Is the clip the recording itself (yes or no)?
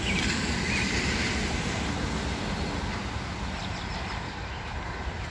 yes